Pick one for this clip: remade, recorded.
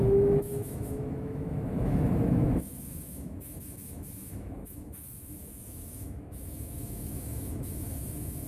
remade